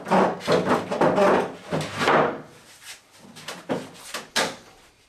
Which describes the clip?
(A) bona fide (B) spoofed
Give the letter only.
A